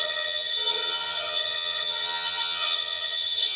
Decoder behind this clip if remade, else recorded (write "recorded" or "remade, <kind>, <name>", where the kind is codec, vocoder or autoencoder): remade, vocoder, HiFi-GAN